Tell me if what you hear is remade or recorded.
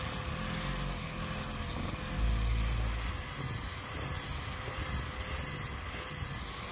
recorded